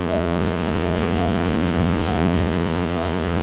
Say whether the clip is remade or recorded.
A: remade